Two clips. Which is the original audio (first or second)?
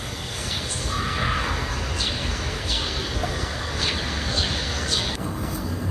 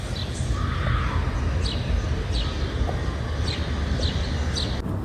second